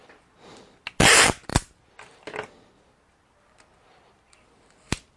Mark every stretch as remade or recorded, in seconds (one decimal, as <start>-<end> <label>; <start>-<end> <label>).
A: 0.0-5.2 recorded